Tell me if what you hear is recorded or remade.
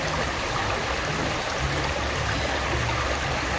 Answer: recorded